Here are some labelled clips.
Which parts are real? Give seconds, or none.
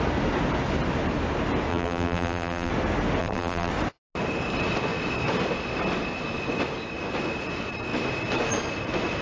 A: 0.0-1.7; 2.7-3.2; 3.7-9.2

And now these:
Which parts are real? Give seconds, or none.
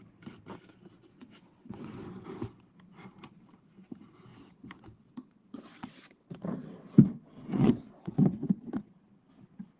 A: 0.0-1.1; 2.1-4.3; 8.9-9.8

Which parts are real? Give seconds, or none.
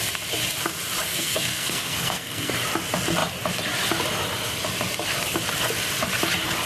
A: 0.0-1.1; 2.5-6.7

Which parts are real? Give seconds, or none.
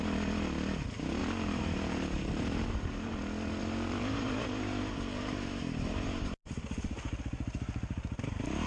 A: 0.0-1.2; 3.1-3.6; 7.2-8.7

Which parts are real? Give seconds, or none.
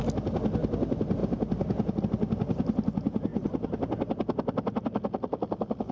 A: 0.0-3.3